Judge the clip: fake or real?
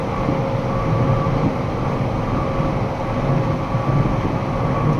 real